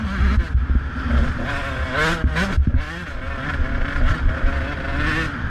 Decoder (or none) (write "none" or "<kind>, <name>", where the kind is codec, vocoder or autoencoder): none